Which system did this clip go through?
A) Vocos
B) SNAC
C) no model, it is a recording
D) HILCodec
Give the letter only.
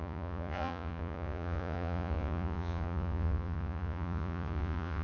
A